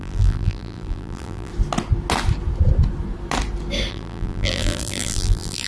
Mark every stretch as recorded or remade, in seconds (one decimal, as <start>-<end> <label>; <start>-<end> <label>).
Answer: 0.0-1.5 remade; 1.5-3.9 recorded; 3.9-5.7 remade